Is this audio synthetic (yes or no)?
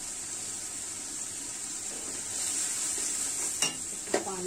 no